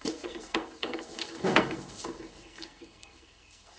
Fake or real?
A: fake